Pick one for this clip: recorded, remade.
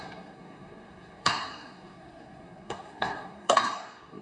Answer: remade